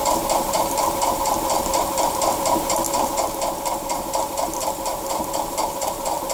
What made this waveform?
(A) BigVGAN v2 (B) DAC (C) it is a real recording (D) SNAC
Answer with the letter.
A